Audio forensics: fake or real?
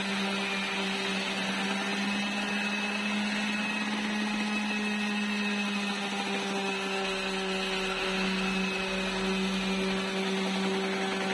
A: real